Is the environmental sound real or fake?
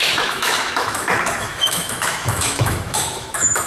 fake